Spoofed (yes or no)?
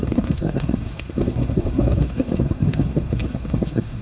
yes